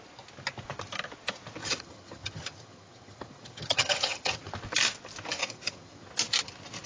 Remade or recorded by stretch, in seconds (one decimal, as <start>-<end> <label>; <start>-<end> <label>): 0.0-1.6 recorded; 1.6-4.5 remade; 4.5-5.4 recorded; 5.4-6.1 remade; 6.1-6.9 recorded